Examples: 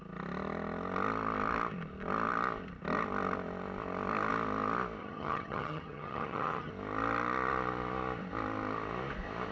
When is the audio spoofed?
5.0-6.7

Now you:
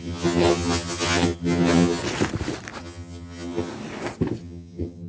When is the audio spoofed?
0.0-2.0; 2.8-3.7; 4.4-5.1

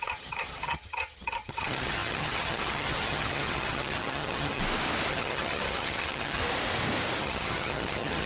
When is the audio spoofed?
0.0-4.6; 5.1-6.4; 7.2-8.3

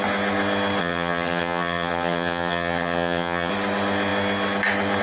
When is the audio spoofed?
0.8-3.5

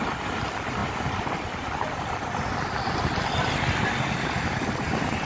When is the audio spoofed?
none

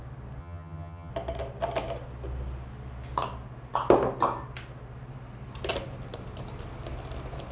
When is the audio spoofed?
0.4-1.1

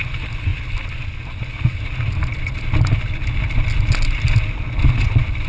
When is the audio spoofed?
none